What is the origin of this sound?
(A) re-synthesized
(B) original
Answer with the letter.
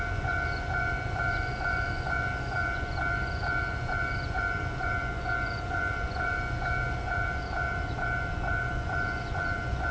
A